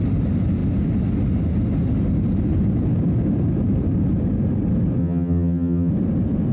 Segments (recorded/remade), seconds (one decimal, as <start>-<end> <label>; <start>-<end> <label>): 0.0-5.0 recorded; 5.0-5.9 remade; 5.9-6.5 recorded